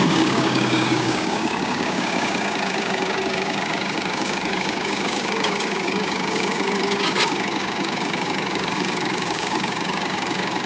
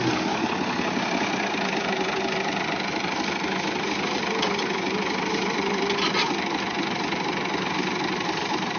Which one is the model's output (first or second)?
first